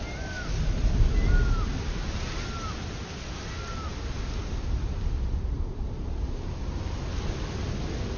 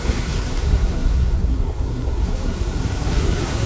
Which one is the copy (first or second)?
second